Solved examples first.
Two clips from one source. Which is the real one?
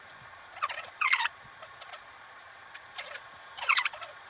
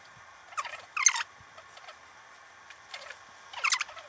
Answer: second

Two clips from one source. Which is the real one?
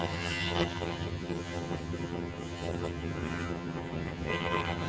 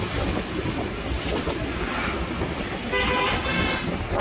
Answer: second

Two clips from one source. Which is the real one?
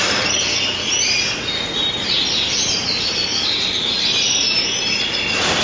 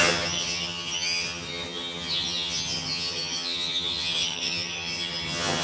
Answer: first